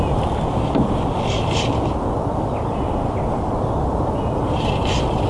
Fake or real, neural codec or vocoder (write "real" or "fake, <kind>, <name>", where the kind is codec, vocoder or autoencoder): fake, vocoder, BigVGAN v2